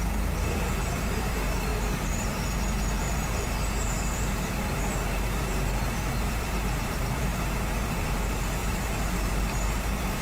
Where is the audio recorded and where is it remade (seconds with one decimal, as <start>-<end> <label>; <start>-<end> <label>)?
0.0-1.7 remade; 1.7-3.0 recorded; 3.0-10.2 remade